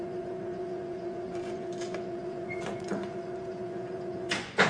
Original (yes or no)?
no